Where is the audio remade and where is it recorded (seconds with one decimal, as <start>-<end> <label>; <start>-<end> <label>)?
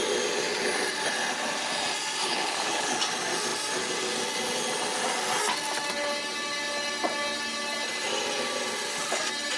0.0-2.2 recorded; 2.2-2.9 remade; 2.9-9.6 recorded